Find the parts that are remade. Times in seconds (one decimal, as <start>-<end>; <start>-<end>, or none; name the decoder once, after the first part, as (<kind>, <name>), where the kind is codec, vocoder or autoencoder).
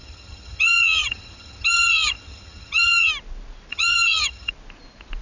0.0-3.1 (vocoder, HiFi-GAN); 3.7-4.5